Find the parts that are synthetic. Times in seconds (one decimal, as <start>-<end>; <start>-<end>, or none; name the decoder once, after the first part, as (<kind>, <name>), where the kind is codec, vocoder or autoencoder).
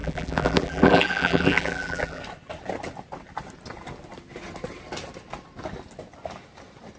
0.0-2.2 (vocoder, BigVGAN v2)